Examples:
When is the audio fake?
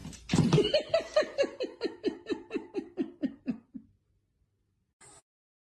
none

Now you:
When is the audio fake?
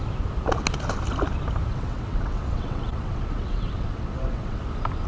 1.7-4.6 (vocoder, WaveNeXt)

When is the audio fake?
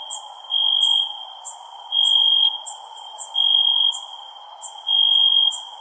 none